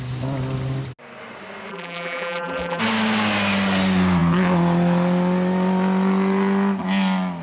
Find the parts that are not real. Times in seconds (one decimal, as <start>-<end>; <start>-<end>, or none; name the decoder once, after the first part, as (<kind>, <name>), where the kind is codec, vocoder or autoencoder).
1.7-2.8 (vocoder, BigVGAN v2)